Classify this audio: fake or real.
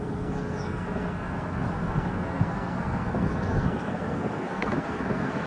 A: fake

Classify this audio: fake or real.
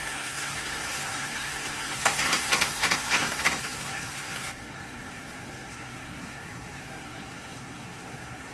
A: fake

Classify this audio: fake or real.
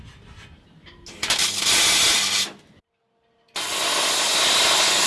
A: real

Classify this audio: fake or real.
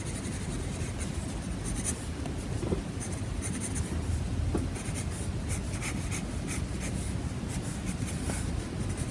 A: real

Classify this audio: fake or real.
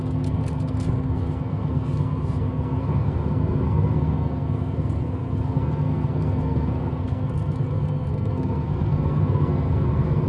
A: fake